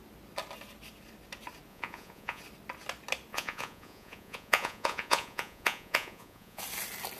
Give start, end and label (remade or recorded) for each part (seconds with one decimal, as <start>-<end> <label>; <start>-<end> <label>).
0.0-1.7 recorded; 1.7-2.4 remade; 2.4-3.3 recorded; 3.3-6.6 remade; 6.6-7.2 recorded